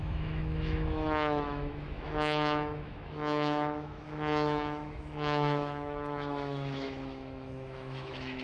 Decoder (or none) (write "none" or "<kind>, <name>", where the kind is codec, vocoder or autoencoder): autoencoder, DAC-VAE